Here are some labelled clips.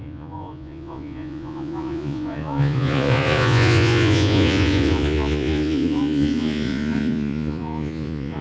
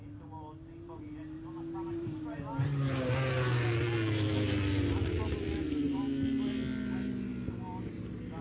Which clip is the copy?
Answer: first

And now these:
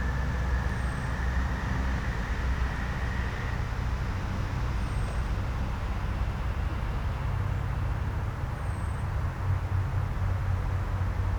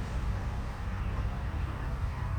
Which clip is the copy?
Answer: second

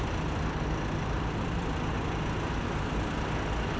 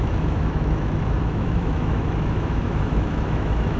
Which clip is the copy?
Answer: second